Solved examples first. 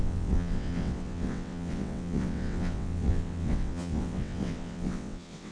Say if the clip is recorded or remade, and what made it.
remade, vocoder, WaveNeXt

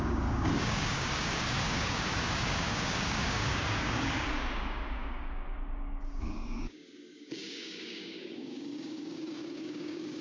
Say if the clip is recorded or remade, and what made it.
remade, codec, DAC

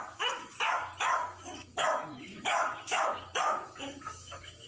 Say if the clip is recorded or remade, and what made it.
remade, autoencoder, DAC-VAE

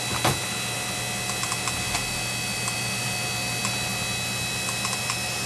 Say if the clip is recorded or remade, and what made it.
recorded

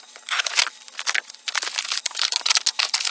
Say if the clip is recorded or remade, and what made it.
recorded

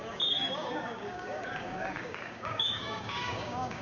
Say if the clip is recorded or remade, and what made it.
remade, codec, DAC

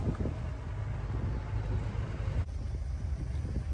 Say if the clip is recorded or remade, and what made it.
recorded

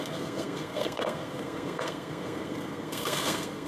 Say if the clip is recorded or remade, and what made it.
remade, codec, SNAC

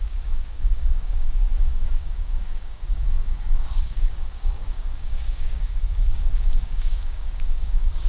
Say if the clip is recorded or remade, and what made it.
remade, codec, DAC